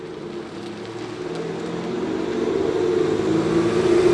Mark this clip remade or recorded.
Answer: recorded